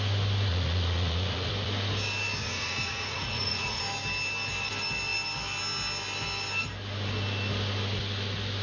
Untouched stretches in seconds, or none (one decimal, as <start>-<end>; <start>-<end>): 0.0-0.5; 1.5-2.4; 3.8-8.6